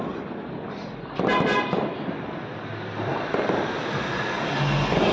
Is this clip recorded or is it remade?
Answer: recorded